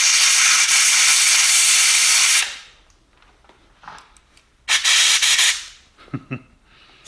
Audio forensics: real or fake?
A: real